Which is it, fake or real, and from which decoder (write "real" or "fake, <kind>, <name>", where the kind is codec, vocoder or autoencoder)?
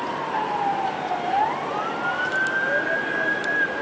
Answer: real